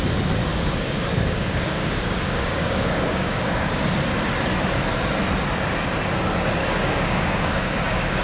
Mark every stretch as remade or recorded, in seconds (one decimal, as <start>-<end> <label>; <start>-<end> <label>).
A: 0.0-0.5 recorded; 0.5-3.8 remade; 3.8-6.6 recorded; 6.6-8.2 remade